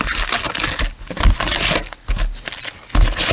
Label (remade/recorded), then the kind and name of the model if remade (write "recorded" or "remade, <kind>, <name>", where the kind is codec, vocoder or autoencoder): recorded